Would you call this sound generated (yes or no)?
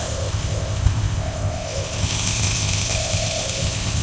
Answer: yes